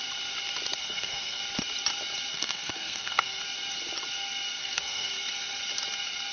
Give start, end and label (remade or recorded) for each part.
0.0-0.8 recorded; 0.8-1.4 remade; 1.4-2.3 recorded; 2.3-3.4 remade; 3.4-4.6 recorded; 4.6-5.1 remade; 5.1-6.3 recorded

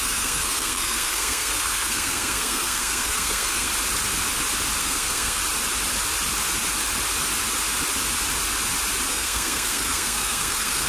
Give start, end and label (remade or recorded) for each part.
0.0-3.7 remade; 3.7-4.8 recorded; 4.8-5.4 remade; 5.4-9.1 recorded; 9.1-10.9 remade

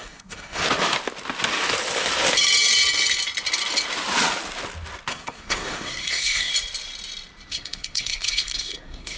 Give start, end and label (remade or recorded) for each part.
0.0-0.6 remade; 0.6-5.1 recorded; 5.1-6.5 remade; 6.5-7.5 recorded; 7.5-9.2 remade